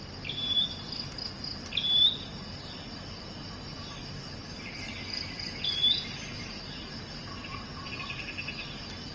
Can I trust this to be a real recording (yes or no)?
yes